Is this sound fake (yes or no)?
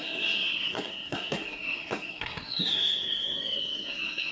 yes